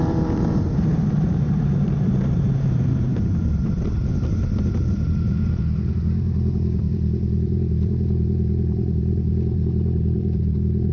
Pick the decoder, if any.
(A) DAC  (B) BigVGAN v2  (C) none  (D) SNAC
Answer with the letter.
B